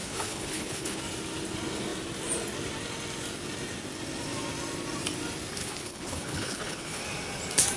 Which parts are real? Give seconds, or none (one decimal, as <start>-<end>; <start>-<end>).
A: 1.0-5.6; 7.0-7.8